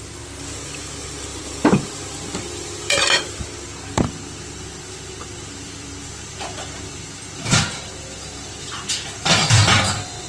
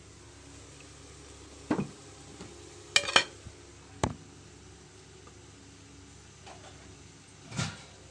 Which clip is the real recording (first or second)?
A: second